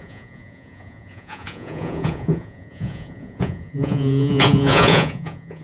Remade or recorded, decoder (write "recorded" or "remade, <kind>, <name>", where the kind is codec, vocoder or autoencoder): remade, vocoder, Vocos